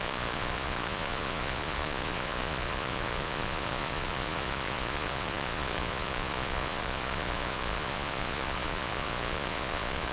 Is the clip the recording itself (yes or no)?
no